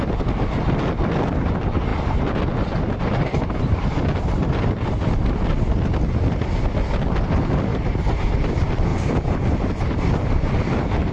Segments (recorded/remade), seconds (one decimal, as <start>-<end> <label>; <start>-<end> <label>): 0.0-7.7 recorded; 7.7-8.3 remade; 8.3-8.9 recorded; 8.9-10.0 remade; 10.0-11.1 recorded